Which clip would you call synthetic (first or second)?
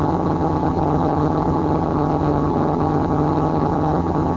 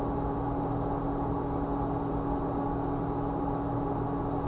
first